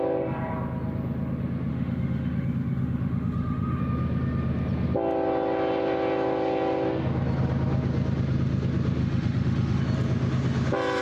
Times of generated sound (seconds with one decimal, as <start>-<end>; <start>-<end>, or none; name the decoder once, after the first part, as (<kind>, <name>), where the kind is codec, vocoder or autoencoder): 1.7-3.8 (autoencoder, DAC-VAE); 9.0-9.8